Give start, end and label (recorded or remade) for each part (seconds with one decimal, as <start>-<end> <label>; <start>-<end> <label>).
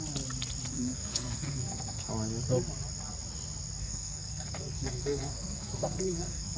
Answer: 0.0-0.7 recorded; 0.7-2.1 remade; 2.1-3.8 recorded; 3.8-6.6 remade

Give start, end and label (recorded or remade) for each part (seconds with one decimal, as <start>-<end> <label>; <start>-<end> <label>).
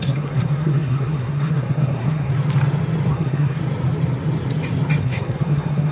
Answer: 0.0-2.3 remade; 2.3-3.1 recorded; 3.1-3.6 remade; 3.6-5.0 recorded; 5.0-5.9 remade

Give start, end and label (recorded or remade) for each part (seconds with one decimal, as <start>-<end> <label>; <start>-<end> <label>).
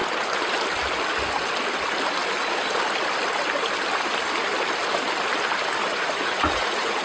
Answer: 0.0-5.8 recorded; 5.8-7.0 remade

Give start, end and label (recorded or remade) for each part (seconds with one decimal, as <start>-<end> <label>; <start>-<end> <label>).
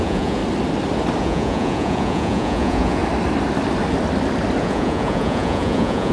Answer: 0.0-0.4 remade; 0.4-1.2 recorded; 1.2-3.0 remade; 3.0-4.6 recorded; 4.6-6.1 remade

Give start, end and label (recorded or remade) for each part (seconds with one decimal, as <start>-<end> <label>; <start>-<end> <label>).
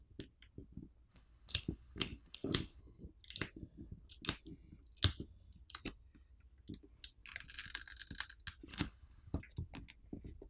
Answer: 0.0-1.1 recorded; 1.1-2.8 remade; 2.8-8.7 recorded; 8.7-9.4 remade; 9.4-10.5 recorded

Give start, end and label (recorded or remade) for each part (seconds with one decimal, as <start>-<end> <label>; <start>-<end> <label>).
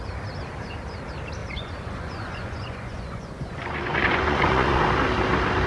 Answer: 0.0-1.4 recorded; 1.4-4.8 remade; 4.8-5.7 recorded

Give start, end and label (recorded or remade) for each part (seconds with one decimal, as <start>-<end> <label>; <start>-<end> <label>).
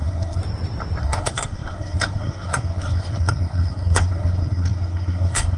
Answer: 0.0-0.4 remade; 0.4-1.0 recorded; 1.0-5.6 remade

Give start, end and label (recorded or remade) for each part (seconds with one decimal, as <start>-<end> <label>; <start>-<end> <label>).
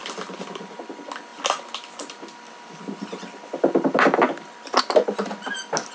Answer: 0.0-5.9 recorded